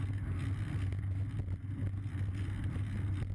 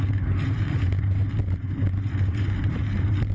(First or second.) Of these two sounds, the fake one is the second